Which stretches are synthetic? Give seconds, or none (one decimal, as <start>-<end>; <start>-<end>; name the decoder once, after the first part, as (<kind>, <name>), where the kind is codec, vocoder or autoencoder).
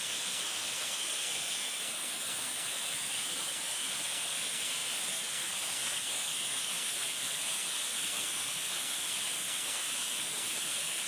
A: 0.0-11.1 (codec, SNAC)